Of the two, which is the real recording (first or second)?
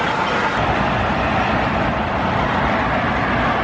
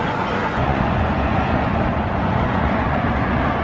first